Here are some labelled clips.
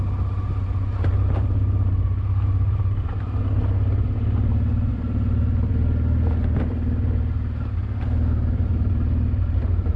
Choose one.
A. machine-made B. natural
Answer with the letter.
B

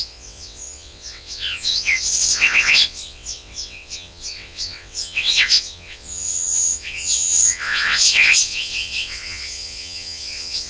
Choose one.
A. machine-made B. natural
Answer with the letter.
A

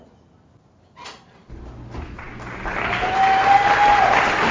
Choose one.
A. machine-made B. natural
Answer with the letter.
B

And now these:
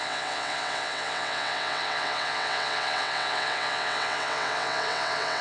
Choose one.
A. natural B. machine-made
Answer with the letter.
B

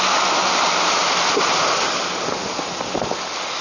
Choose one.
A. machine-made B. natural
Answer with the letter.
B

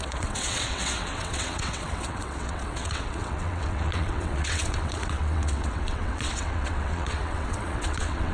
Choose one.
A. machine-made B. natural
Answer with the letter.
A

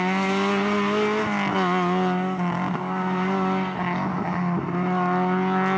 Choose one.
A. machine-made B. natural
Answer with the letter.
B